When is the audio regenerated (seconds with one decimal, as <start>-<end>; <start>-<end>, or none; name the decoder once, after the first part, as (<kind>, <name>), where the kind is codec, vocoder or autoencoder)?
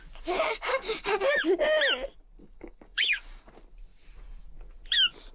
0.7-1.3 (codec, DAC); 2.4-3.5